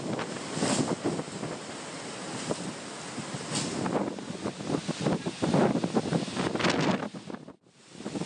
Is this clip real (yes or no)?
yes